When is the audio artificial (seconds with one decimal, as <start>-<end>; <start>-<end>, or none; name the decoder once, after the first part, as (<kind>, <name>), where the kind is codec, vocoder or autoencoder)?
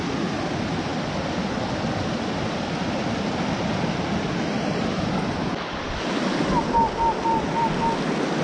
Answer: none